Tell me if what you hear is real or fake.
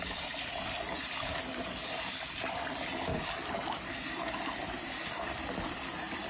fake